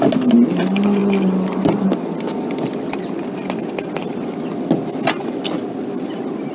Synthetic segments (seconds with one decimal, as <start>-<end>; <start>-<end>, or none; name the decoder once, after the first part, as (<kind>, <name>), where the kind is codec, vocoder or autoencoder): none